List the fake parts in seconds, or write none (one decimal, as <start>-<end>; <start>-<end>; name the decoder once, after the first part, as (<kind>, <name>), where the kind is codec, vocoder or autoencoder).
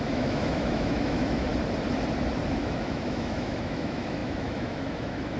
0.0-1.5 (autoencoder, DAC-VAE); 2.6-5.4